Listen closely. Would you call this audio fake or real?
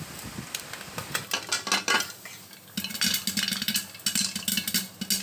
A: real